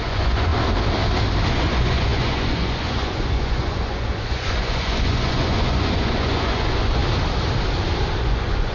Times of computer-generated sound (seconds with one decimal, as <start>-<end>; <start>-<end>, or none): 0.0-0.5; 1.5-7.0; 8.2-8.7